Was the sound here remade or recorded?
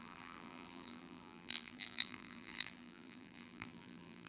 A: remade